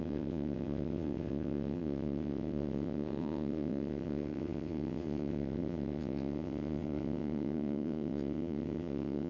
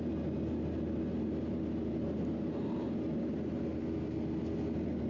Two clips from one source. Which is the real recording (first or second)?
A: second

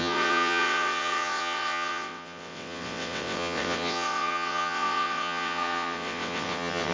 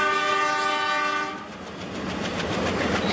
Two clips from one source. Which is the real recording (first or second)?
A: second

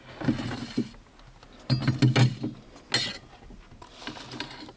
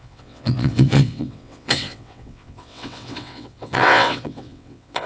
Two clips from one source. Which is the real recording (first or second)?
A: first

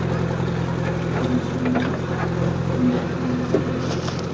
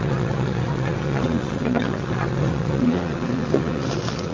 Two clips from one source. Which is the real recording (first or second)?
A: first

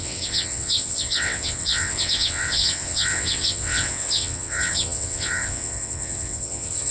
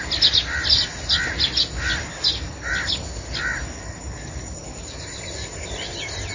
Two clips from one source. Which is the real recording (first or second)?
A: second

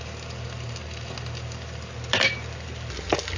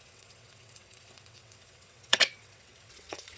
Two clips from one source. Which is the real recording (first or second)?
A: first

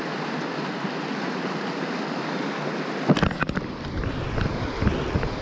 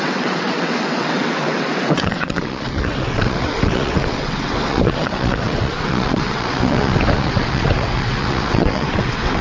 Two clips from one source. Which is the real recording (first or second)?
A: first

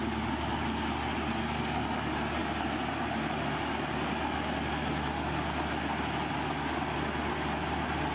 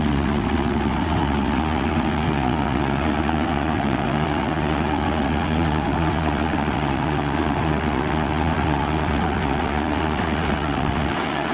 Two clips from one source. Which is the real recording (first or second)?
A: first